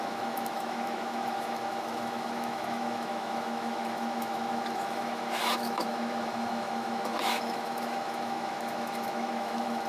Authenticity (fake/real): fake